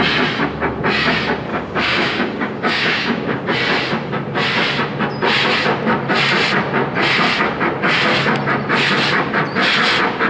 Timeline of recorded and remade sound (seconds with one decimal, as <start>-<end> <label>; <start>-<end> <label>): 0.0-1.5 recorded; 1.5-3.4 remade; 3.4-10.3 recorded